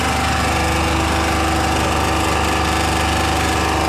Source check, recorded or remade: recorded